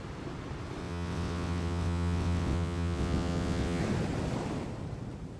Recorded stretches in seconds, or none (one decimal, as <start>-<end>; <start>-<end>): 0.0-0.8; 3.8-5.4